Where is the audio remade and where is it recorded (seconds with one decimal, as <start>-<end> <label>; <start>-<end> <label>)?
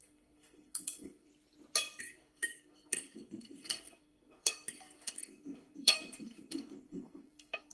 0.0-1.3 remade; 1.3-2.0 recorded; 2.0-7.7 remade